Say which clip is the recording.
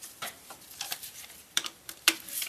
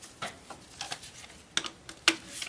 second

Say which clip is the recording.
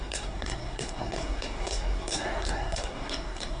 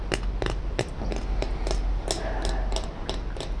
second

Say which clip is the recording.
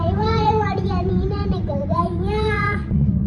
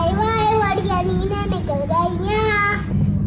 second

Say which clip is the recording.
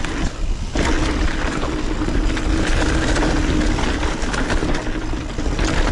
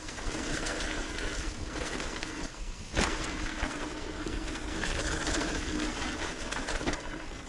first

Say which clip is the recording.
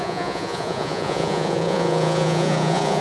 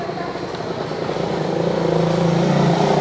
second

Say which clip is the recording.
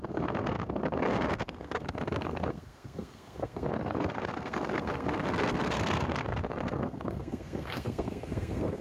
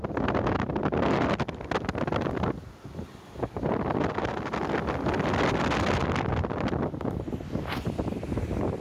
second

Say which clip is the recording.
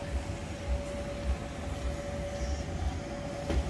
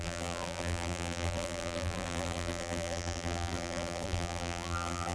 first